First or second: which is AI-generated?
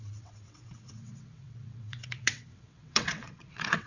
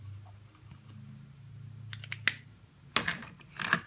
first